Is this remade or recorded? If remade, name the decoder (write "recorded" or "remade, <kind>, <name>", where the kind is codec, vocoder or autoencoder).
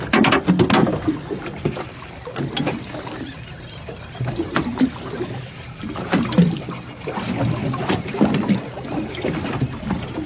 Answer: recorded